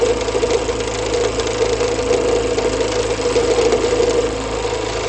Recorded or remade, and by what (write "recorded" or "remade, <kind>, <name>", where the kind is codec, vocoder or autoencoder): recorded